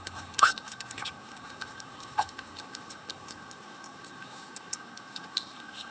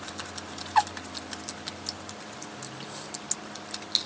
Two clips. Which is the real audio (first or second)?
second